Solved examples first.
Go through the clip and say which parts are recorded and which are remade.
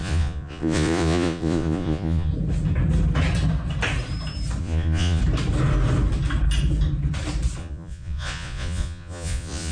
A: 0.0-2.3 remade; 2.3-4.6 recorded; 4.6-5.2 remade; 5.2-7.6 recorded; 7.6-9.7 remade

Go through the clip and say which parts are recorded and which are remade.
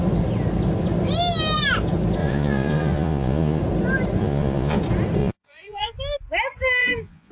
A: 0.0-2.2 recorded; 2.2-3.6 remade; 3.6-4.2 recorded; 4.2-4.8 remade; 4.8-5.2 recorded; 5.2-6.0 remade; 6.0-6.8 recorded; 6.8-7.3 remade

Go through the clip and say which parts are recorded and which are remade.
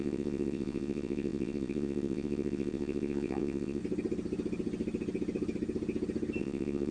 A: 0.0-3.8 remade; 3.8-6.4 recorded; 6.4-6.9 remade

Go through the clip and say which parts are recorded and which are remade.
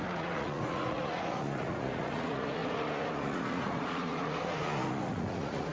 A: 0.0-5.7 remade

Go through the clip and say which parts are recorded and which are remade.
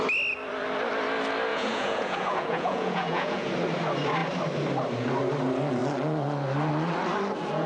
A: 0.0-1.5 recorded; 1.5-3.5 remade; 3.5-7.7 recorded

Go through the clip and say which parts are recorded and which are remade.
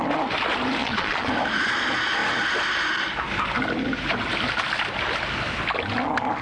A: 0.0-0.8 recorded; 0.8-1.3 remade; 1.3-6.4 recorded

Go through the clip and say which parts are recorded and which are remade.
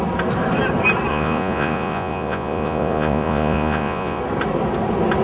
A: 0.0-1.1 recorded; 1.1-4.2 remade; 4.2-5.2 recorded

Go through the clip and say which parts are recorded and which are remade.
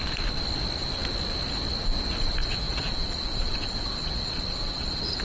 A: 0.0-2.4 recorded; 2.4-5.2 remade